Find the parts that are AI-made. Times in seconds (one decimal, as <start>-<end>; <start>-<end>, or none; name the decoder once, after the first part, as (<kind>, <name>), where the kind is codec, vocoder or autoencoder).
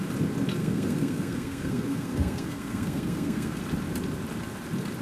0.6-3.6 (codec, SNAC)